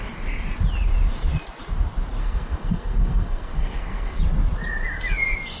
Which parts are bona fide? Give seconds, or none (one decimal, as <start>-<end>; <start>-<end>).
0.0-2.2; 4.2-5.6